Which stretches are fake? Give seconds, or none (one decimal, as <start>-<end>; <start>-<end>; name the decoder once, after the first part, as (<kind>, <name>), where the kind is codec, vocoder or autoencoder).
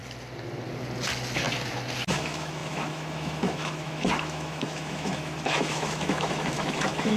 2.1-7.2 (autoencoder, DAC-VAE)